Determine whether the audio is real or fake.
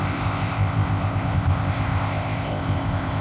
fake